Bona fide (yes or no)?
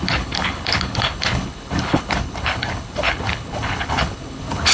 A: no